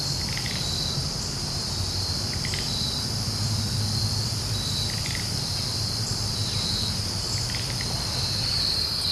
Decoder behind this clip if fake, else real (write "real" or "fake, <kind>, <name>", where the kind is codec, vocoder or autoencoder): fake, vocoder, BigVGAN v2